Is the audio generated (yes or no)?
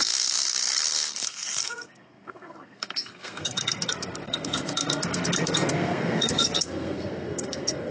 yes